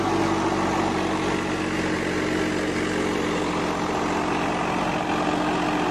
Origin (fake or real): real